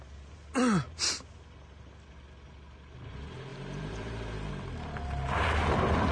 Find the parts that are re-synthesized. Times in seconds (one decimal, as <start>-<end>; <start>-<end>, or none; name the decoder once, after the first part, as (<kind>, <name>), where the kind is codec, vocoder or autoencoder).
3.5-4.5 (vocoder, BigVGAN v2)